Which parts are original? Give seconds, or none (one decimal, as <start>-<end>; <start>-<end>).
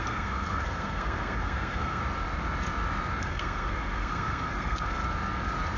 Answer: 2.0-3.2; 5.0-5.8